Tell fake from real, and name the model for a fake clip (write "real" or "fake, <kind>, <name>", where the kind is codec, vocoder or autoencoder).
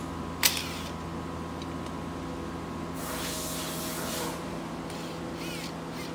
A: real